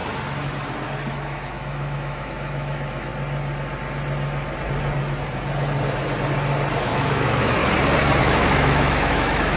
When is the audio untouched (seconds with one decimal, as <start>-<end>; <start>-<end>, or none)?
0.0-1.1; 3.1-6.8; 7.6-8.2